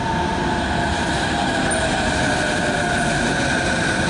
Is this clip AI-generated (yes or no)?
no